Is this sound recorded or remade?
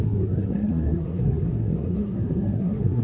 remade